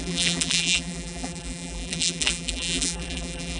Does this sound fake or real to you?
fake